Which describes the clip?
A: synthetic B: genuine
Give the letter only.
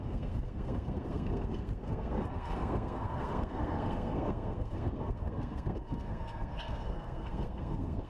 A